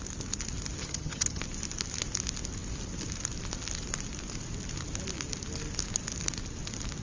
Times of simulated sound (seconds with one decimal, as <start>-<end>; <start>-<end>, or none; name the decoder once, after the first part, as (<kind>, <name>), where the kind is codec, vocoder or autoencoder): 0.8-1.4 (vocoder, HiFi-GAN)